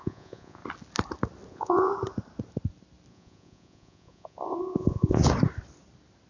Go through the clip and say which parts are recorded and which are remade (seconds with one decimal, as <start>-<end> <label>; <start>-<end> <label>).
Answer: 0.0-0.6 remade; 0.6-1.5 recorded; 1.5-1.9 remade; 1.9-3.1 recorded; 3.1-5.2 remade; 5.2-6.3 recorded